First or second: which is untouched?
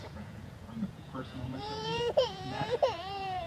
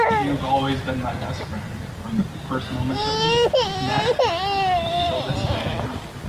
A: second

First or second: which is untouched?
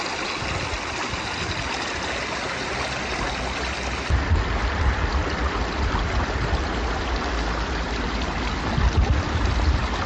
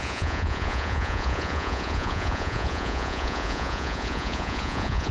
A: first